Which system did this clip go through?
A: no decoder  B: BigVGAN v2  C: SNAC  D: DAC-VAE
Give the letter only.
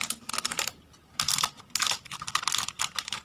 A